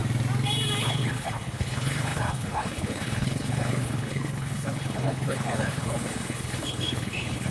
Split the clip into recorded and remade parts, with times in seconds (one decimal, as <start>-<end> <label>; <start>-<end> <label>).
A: 0.0-0.8 recorded; 0.8-7.5 remade